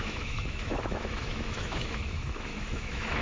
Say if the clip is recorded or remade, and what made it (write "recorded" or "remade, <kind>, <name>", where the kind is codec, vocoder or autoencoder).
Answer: remade, autoencoder, DAC-VAE